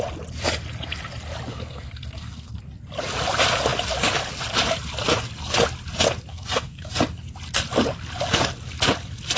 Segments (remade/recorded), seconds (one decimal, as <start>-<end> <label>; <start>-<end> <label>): 0.0-1.5 recorded; 1.5-2.6 remade; 2.6-6.3 recorded; 6.3-6.9 remade; 6.9-9.4 recorded